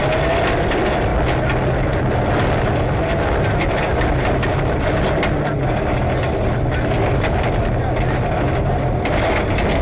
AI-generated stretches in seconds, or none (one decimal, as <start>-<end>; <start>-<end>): none